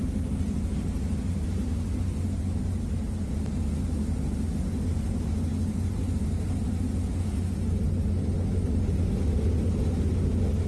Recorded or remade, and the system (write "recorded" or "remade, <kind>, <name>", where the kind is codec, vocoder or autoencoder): recorded